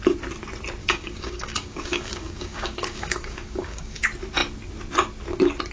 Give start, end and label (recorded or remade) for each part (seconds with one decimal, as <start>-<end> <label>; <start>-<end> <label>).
0.0-0.8 recorded; 0.8-4.0 remade; 4.0-5.7 recorded